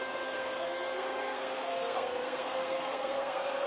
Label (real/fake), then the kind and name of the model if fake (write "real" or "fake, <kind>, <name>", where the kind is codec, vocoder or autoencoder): fake, codec, SNAC